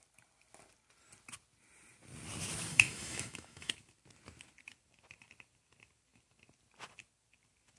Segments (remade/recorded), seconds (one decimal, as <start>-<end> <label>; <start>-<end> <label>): 0.0-2.7 recorded; 2.7-3.7 remade; 3.7-7.8 recorded